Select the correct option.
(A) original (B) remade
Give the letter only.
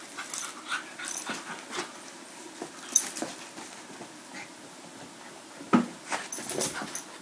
A